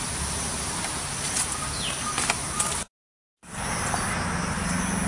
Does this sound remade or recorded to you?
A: recorded